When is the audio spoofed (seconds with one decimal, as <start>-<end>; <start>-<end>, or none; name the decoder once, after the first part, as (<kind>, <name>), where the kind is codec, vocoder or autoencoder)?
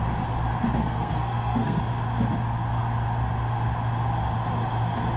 0.8-1.8 (codec, SNAC)